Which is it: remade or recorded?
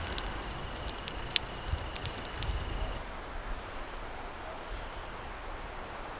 recorded